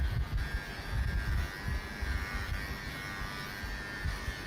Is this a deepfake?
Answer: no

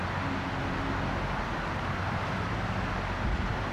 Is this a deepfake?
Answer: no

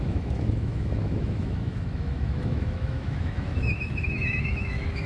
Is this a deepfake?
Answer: yes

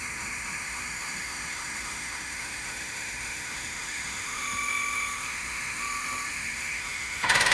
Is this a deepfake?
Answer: yes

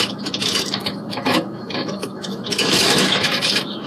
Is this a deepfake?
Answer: yes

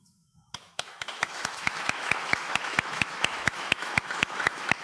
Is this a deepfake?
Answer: yes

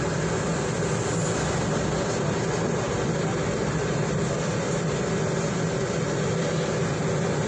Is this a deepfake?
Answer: no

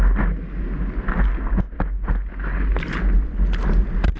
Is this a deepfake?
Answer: no